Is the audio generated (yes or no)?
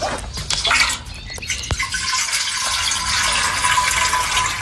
no